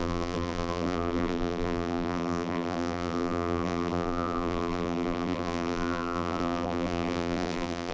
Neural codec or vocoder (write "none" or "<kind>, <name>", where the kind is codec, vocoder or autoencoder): vocoder, BigVGAN v2